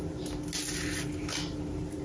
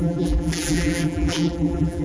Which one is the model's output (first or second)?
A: second